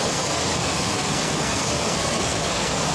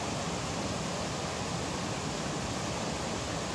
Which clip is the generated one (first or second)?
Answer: first